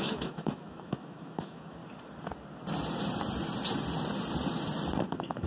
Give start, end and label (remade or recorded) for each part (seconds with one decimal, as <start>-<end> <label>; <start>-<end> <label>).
0.0-1.8 remade; 1.8-5.1 recorded; 5.1-5.5 remade